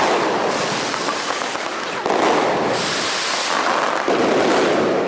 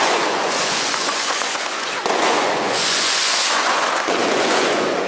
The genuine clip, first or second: first